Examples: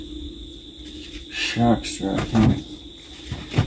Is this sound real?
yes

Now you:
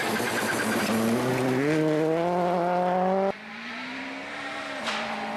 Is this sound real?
yes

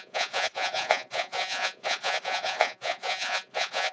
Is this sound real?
no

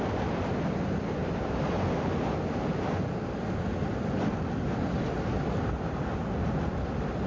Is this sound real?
yes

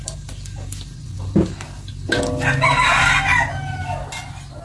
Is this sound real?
yes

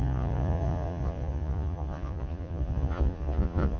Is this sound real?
no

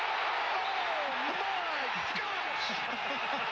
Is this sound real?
yes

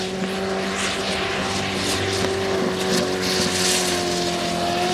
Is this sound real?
yes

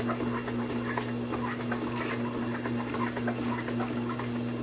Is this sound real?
yes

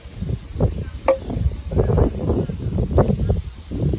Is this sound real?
yes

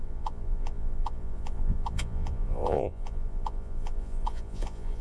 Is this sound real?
no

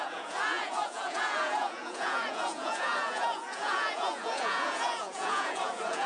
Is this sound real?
no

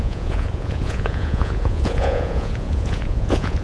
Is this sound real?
no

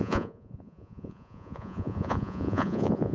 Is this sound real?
no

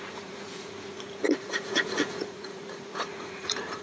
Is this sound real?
no